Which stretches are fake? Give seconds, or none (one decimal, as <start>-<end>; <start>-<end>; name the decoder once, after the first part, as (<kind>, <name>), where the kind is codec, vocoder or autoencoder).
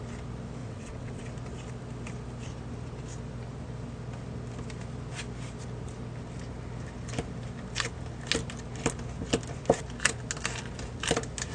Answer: 0.6-1.2 (vocoder, WaveNeXt)